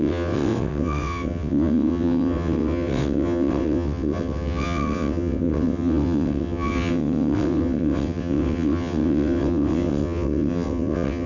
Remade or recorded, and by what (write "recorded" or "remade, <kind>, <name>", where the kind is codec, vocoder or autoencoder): remade, vocoder, WaveNeXt